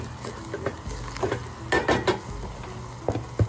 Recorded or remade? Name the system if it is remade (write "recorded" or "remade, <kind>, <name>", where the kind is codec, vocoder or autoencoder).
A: recorded